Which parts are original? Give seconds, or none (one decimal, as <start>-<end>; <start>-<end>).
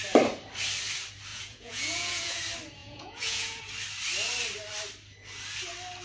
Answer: 0.0-1.3; 2.4-2.8; 3.6-6.0